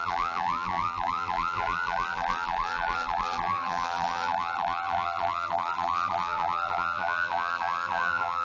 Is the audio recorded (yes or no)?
no